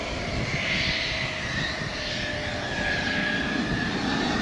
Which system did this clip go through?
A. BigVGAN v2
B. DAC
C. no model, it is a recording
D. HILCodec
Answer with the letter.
C